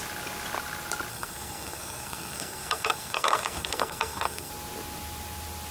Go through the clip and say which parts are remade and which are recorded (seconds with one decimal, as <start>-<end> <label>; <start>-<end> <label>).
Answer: 0.0-1.1 recorded; 1.1-4.5 remade; 4.5-5.7 recorded